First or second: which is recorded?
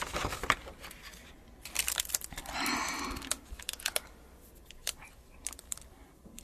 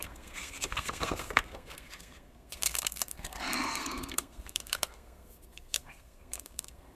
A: first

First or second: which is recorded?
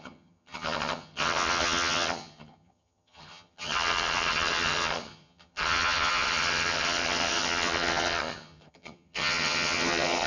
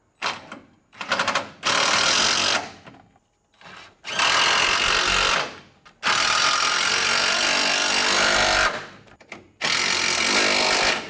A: second